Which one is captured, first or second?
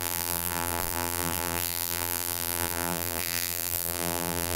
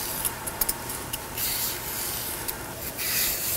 second